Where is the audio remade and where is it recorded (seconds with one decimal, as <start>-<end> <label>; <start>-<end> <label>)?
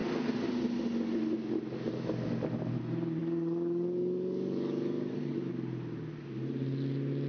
0.0-3.2 recorded; 3.2-5.5 remade; 5.5-7.3 recorded